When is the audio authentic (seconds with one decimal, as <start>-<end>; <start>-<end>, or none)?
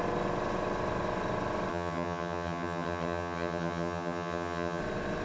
0.0-1.7; 4.8-5.2